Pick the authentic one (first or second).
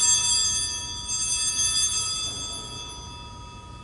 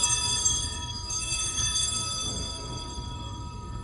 first